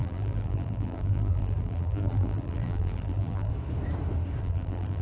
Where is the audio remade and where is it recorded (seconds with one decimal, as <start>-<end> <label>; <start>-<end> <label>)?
0.0-3.5 remade; 3.5-4.4 recorded; 4.4-5.0 remade